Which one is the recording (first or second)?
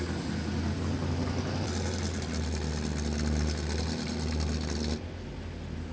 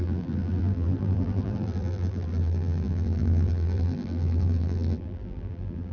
first